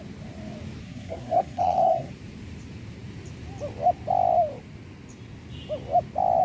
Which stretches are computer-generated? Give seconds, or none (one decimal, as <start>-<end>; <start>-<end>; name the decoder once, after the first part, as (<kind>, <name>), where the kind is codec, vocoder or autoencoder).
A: 0.8-2.1 (codec, SNAC)